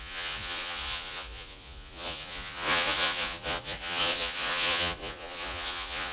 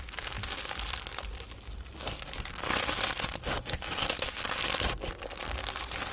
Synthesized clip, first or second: first